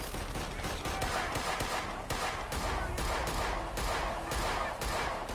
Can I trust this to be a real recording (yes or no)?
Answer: yes